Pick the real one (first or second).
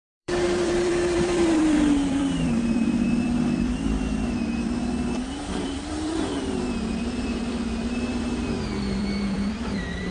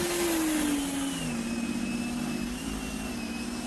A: second